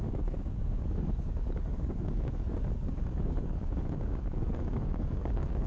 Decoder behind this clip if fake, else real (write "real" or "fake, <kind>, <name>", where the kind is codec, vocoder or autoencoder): fake, codec, DAC